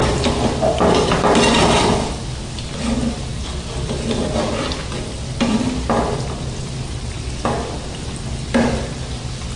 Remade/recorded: recorded